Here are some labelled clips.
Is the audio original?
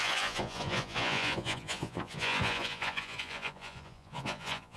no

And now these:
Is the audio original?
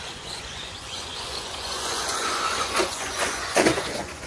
no